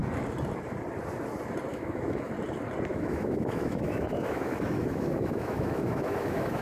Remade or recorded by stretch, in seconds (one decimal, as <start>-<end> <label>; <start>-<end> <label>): 0.0-1.7 recorded; 1.7-2.3 remade; 2.3-2.9 recorded; 2.9-6.6 remade